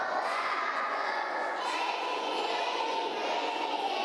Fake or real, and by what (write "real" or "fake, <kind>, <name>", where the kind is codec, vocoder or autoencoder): fake, vocoder, Vocos